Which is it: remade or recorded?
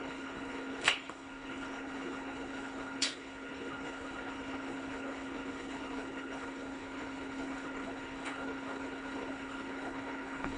remade